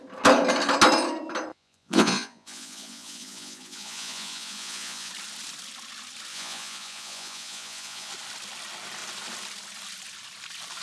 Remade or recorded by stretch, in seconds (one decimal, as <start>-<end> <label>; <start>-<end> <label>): 0.0-1.5 recorded; 1.5-5.1 remade; 5.1-6.3 recorded; 6.3-8.1 remade; 8.1-10.8 recorded